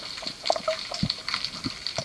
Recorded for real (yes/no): yes